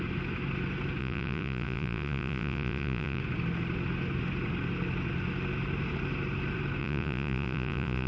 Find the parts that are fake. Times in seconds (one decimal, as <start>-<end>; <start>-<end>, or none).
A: 1.0-3.2; 6.8-8.1